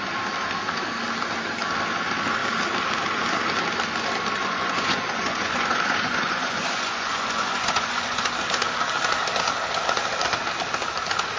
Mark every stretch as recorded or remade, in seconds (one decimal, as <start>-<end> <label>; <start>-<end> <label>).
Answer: 0.0-4.4 recorded; 4.4-8.2 remade; 8.2-11.4 recorded